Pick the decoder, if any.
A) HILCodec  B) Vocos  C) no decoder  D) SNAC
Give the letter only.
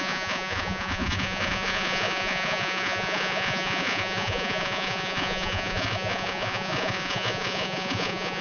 B